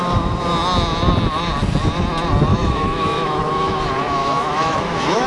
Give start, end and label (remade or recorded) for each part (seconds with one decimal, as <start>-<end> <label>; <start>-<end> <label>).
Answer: 0.0-2.5 recorded; 2.5-3.8 remade; 3.8-4.2 recorded; 4.2-5.3 remade